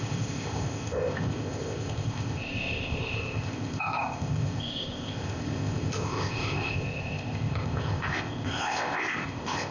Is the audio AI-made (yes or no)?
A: yes